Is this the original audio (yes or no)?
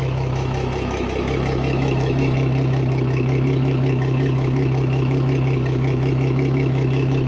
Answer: no